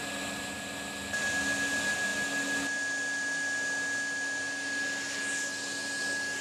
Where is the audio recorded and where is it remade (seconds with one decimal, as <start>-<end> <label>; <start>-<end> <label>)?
0.0-6.4 recorded